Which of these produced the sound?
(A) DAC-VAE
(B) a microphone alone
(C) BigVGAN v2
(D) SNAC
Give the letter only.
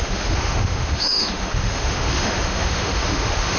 A